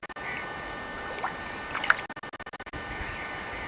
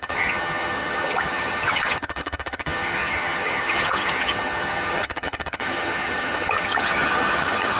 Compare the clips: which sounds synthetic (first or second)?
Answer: second